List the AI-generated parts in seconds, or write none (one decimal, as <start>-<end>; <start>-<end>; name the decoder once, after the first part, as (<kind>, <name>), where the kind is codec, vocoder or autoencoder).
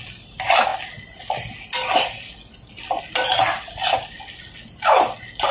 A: none